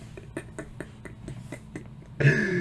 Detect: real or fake real